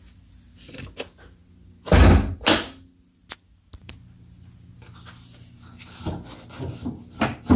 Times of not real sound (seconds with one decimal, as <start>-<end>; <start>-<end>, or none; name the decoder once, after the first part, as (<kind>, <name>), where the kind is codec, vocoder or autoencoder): none